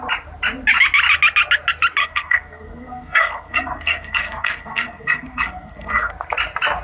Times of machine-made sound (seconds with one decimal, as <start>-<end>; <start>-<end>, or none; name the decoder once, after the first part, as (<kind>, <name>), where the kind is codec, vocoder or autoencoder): 2.0-6.1 (codec, SNAC)